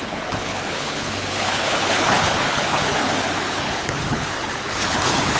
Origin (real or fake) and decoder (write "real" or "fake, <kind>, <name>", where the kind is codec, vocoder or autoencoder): fake, codec, HILCodec